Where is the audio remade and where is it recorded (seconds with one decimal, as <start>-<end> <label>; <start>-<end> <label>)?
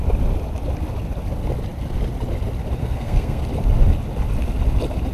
0.0-2.8 recorded; 2.8-3.4 remade; 3.4-5.1 recorded